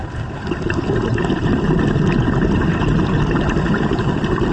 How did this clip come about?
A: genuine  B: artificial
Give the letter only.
A